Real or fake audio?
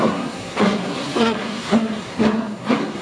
fake